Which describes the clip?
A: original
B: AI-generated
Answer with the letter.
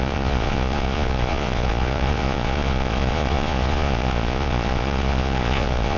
B